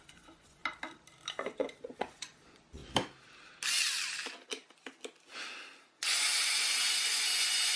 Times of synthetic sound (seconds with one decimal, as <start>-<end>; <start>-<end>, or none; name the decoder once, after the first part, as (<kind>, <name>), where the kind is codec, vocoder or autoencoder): 0.0-0.6 (vocoder, Vocos); 1.4-2.8; 5.9-7.8